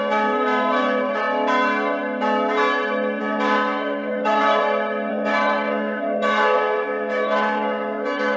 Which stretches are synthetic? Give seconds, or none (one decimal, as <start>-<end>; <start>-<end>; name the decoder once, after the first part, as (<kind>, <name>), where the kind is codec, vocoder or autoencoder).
0.0-1.1 (codec, SNAC); 3.2-4.6; 5.1-8.4

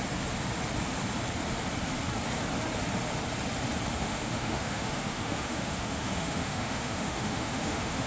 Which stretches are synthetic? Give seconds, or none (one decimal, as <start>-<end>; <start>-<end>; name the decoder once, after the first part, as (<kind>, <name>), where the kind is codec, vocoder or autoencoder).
4.0-8.1 (autoencoder, DAC-VAE)

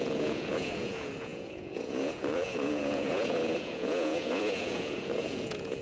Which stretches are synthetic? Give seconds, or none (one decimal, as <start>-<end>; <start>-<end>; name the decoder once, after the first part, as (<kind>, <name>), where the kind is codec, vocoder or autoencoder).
0.0-5.8 (vocoder, Vocos)

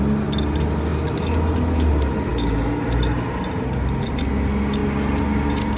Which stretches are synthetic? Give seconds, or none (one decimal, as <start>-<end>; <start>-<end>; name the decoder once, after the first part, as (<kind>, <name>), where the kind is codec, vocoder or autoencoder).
none

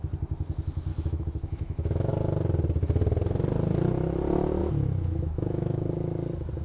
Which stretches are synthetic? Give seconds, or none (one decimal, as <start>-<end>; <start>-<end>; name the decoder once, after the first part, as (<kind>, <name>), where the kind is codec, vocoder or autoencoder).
0.9-2.1 (autoencoder, DAC-VAE); 4.6-5.9

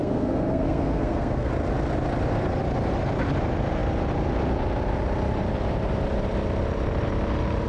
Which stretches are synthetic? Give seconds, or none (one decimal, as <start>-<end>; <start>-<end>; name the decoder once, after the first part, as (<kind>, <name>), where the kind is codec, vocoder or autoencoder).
0.0-1.5 (codec, SNAC)